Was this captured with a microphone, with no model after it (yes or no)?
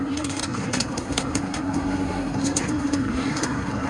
no